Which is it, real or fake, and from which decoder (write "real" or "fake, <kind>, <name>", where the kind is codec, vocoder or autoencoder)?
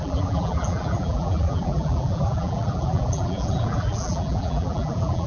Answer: fake, vocoder, BigVGAN v2